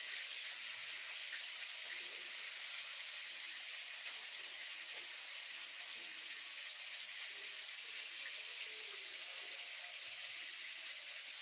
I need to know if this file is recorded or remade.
recorded